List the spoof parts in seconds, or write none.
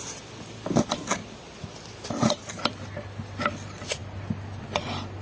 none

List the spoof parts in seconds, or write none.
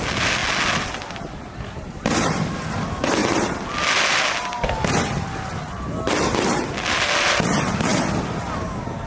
none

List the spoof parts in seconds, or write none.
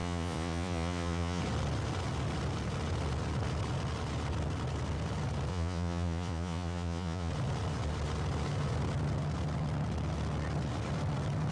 0.0-1.4 (vocoder, Vocos); 5.5-7.3